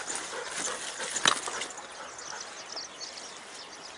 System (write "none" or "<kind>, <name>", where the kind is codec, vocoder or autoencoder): none